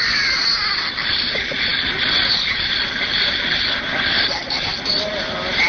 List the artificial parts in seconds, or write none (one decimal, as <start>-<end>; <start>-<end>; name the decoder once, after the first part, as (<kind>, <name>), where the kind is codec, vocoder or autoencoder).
none